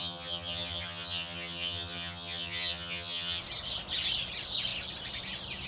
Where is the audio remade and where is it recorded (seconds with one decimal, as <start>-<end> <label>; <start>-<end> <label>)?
0.0-3.4 remade; 3.4-5.7 recorded